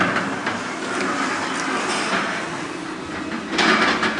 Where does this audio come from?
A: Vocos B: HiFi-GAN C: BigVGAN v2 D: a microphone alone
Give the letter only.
C